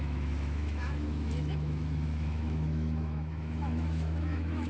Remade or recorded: remade